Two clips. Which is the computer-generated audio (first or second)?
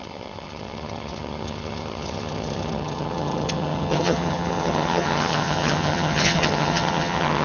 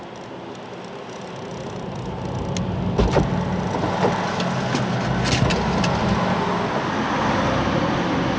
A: first